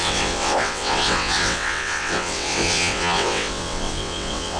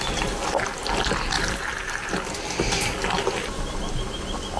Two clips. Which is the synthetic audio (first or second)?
first